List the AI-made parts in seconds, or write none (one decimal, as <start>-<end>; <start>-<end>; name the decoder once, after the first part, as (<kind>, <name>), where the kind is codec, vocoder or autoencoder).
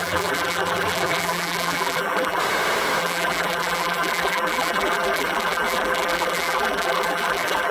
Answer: 0.0-2.4 (vocoder, BigVGAN v2); 3.0-7.7